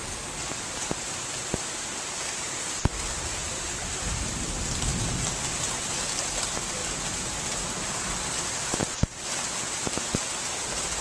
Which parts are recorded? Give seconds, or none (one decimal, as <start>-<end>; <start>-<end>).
0.0-11.0